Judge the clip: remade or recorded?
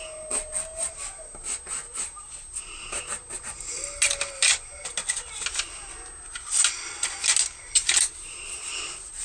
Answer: recorded